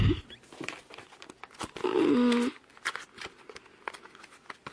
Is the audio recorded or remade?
recorded